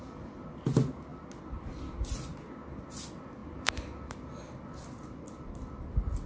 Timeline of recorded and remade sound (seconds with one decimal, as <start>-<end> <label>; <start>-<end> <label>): 0.0-6.3 recorded